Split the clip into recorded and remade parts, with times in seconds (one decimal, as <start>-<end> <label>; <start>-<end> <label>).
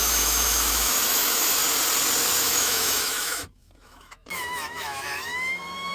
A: 0.0-1.6 remade; 1.6-2.2 recorded; 2.2-5.9 remade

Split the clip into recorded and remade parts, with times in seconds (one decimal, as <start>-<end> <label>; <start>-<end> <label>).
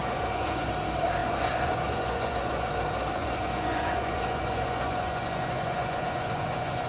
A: 0.0-0.7 remade; 0.7-1.2 recorded; 1.2-2.7 remade; 2.7-3.2 recorded; 3.2-6.9 remade